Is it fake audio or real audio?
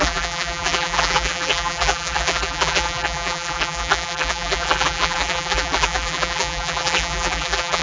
fake